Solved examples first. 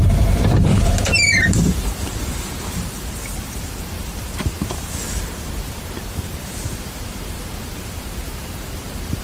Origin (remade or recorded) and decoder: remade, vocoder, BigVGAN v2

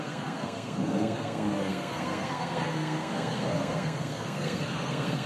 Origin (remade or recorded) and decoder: remade, codec, SNAC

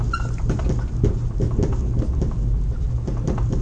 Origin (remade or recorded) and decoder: recorded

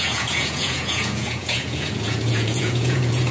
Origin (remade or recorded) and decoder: remade, vocoder, Vocos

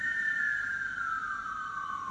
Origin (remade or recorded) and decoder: remade, vocoder, BigVGAN v2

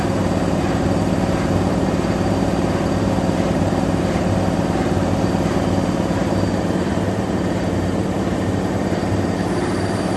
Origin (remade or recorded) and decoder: remade, vocoder, BigVGAN v2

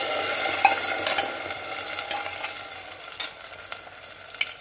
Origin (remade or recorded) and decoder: recorded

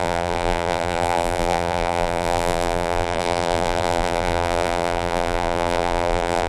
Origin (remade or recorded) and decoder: remade, vocoder, BigVGAN v2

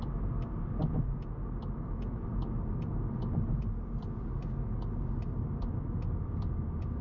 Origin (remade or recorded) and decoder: recorded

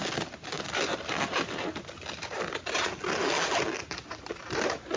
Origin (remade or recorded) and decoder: recorded